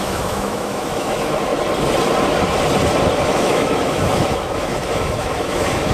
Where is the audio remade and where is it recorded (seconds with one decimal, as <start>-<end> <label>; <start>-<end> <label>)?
0.0-1.5 remade; 1.5-3.2 recorded; 3.2-5.9 remade